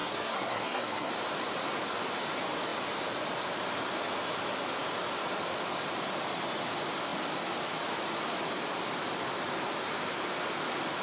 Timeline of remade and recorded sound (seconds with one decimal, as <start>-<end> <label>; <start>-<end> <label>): 0.0-1.1 remade; 1.1-11.0 recorded